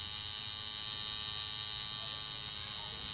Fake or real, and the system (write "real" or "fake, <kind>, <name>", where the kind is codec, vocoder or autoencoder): real